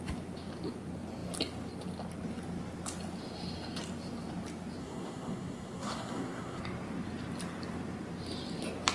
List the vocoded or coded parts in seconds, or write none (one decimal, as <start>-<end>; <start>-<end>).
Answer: 4.8-6.6